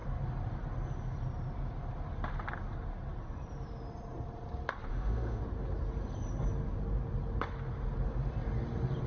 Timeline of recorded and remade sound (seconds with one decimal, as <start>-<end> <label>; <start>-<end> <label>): 0.0-4.9 recorded; 4.9-5.4 remade; 5.4-9.1 recorded

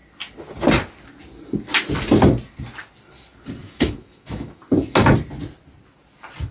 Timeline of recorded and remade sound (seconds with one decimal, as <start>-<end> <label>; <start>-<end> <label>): 0.0-3.6 recorded; 3.6-4.6 remade; 4.6-6.5 recorded